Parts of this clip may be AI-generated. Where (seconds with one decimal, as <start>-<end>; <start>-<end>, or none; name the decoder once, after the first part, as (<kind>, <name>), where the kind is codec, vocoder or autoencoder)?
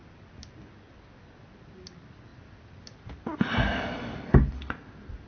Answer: none